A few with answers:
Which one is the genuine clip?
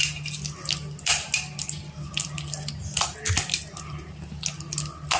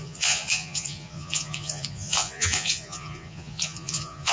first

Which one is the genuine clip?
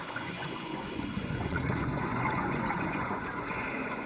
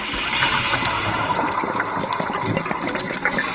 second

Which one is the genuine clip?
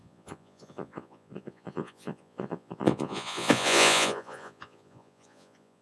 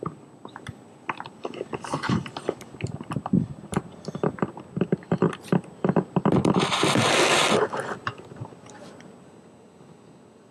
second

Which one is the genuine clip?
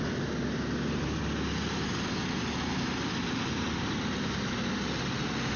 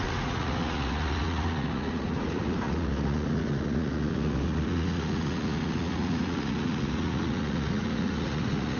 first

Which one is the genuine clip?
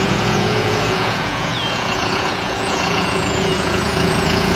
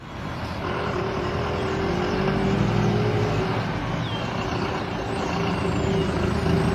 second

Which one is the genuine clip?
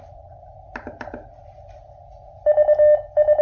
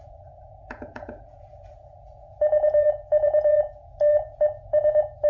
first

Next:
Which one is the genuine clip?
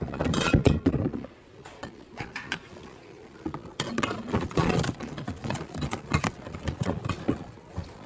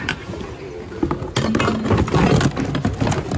second